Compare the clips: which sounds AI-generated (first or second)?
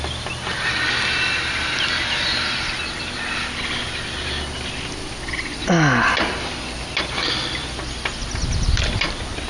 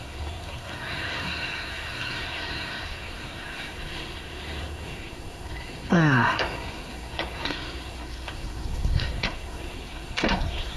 second